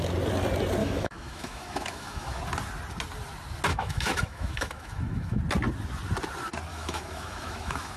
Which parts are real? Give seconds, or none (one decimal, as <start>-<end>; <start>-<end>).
0.0-0.8; 2.4-3.7; 5.4-6.7